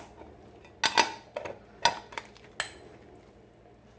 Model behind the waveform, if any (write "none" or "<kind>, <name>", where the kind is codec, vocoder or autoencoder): none